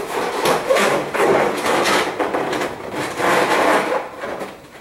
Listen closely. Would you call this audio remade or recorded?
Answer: remade